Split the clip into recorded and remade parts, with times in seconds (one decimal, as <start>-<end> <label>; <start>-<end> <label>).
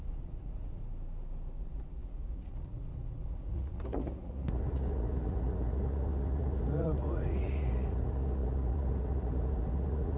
0.0-0.8 remade; 0.8-1.6 recorded; 1.6-10.2 remade